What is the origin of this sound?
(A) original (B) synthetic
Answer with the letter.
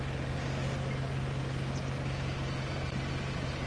A